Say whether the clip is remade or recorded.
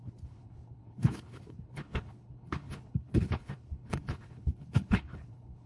remade